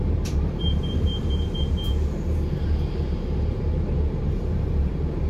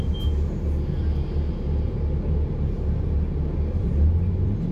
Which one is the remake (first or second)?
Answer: first